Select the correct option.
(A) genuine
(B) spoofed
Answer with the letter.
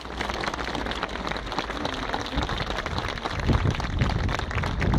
A